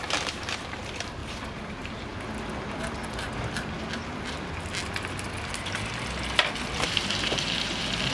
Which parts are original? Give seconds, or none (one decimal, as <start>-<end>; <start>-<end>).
1.2-1.7; 2.1-6.7